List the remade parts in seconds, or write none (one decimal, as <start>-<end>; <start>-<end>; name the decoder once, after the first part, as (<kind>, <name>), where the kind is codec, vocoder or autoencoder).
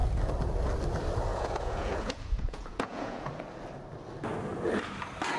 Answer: 1.3-3.4 (vocoder, Vocos)